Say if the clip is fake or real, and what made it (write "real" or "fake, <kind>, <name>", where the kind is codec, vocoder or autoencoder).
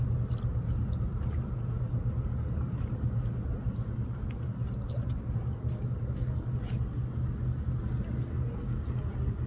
real